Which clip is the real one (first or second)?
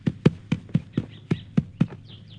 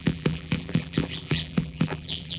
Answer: first